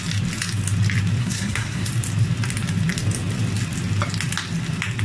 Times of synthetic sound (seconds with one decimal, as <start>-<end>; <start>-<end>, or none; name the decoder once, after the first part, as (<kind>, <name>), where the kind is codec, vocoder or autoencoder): 1.2-1.9 (codec, SNAC)